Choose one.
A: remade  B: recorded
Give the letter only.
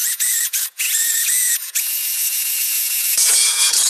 A